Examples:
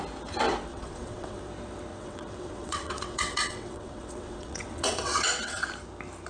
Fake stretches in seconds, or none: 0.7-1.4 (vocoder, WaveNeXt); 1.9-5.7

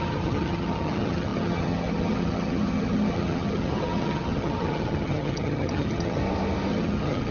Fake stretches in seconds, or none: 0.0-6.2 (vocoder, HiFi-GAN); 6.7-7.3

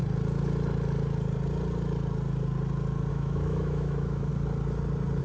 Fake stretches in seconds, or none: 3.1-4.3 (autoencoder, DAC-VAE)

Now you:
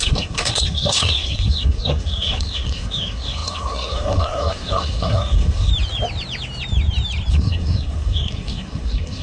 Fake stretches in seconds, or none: 0.0-5.7 (codec, SNAC); 7.3-9.2